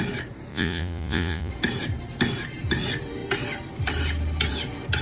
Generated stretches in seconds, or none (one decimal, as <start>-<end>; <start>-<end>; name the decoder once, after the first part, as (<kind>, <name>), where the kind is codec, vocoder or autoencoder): 0.5-1.5 (vocoder, Vocos)